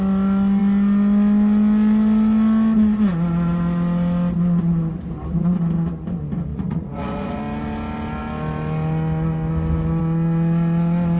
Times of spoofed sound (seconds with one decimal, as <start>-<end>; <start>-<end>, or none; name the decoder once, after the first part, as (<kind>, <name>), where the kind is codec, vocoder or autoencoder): 6.5-7.4 (vocoder, Vocos)